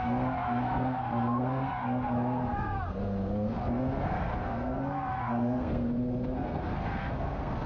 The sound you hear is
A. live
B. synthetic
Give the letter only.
B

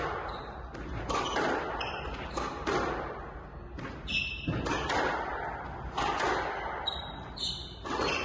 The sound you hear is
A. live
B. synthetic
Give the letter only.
A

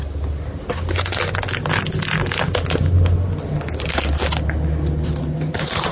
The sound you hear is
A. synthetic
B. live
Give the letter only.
B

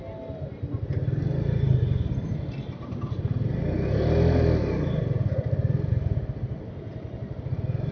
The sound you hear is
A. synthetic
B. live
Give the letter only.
B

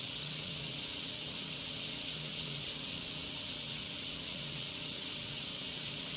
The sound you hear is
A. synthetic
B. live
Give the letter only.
A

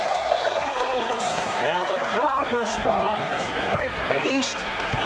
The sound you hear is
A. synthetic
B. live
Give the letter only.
A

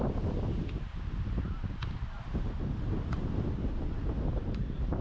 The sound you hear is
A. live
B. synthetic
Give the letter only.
A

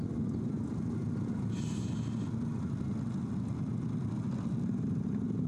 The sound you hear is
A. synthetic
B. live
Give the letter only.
B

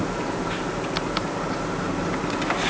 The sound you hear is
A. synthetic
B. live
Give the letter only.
B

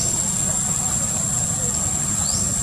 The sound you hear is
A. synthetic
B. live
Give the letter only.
B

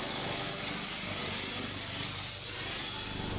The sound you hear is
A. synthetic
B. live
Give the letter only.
B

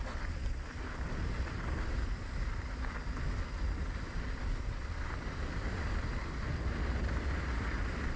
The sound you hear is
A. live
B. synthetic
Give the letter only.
A